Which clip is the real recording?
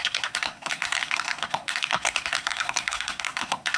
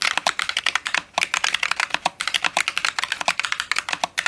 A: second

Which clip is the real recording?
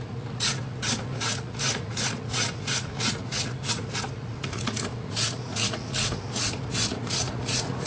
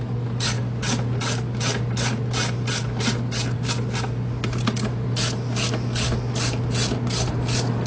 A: second